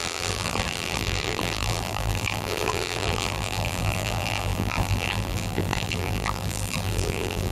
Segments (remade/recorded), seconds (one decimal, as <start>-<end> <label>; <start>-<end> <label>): 0.0-7.5 remade